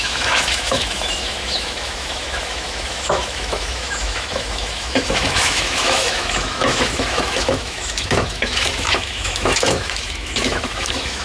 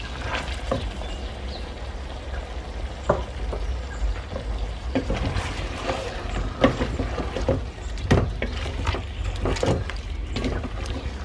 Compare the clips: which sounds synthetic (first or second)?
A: first